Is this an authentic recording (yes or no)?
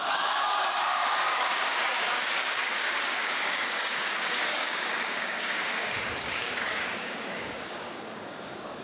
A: no